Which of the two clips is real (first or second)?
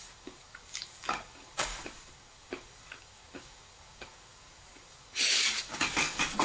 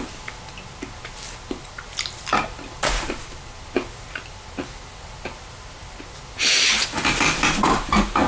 second